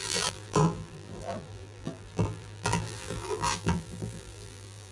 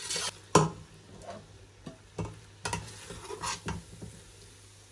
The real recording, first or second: second